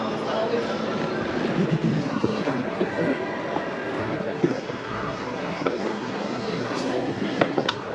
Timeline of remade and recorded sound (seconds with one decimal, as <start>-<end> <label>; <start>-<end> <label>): 0.0-2.0 recorded; 2.0-2.9 remade; 2.9-4.0 recorded; 4.0-7.9 remade